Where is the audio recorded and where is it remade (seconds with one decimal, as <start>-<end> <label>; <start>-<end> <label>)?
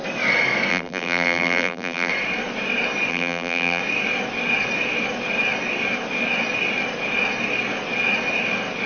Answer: 0.0-0.7 recorded; 0.7-2.1 remade; 2.1-3.1 recorded; 3.1-3.8 remade; 3.8-8.9 recorded